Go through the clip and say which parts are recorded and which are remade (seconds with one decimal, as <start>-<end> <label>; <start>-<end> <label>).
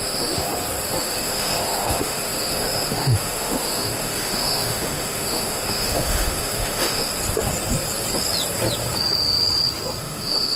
0.0-0.5 remade; 0.5-1.0 recorded; 1.0-7.1 remade; 7.1-10.0 recorded; 10.0-10.6 remade